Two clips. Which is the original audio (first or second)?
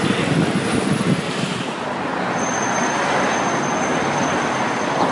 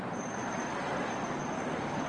first